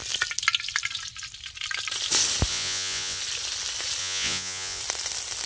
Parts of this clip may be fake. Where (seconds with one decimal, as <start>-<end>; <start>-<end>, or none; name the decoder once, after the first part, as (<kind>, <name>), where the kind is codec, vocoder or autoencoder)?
2.5-3.2 (vocoder, Vocos); 4.0-4.8